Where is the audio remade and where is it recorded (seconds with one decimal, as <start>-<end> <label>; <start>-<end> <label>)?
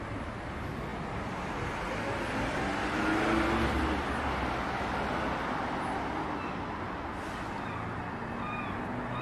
0.0-9.2 recorded